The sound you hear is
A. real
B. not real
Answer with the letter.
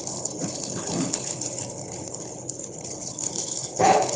B